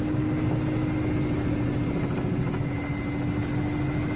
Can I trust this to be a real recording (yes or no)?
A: yes